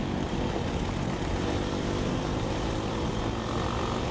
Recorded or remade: recorded